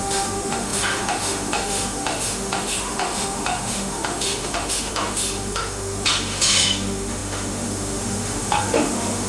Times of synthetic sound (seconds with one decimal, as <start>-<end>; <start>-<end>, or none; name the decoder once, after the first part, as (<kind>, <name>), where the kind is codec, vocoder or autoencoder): 0.0-9.3 (autoencoder, DAC-VAE)